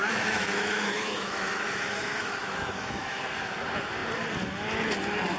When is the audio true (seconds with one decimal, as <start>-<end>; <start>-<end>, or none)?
3.2-5.4